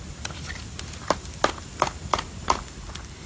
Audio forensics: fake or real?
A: real